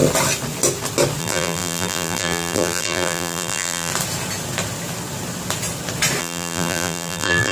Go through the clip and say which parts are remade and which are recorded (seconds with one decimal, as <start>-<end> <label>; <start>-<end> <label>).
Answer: 0.0-1.2 recorded; 1.2-3.9 remade; 3.9-6.2 recorded; 6.2-7.5 remade